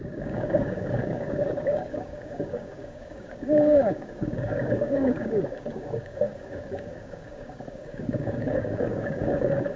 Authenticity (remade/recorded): remade